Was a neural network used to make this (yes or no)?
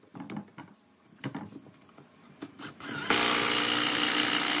no